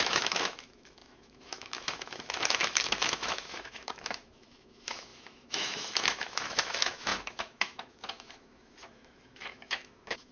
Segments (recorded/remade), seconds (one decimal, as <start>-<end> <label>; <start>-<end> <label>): 0.0-10.3 remade